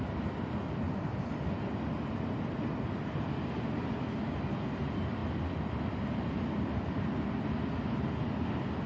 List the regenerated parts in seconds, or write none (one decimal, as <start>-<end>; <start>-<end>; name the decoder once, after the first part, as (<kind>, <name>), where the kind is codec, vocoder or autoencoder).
none